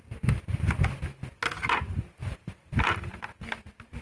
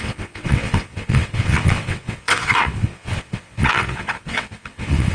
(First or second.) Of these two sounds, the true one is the first